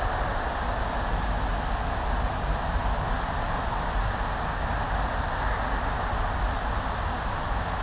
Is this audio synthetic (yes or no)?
no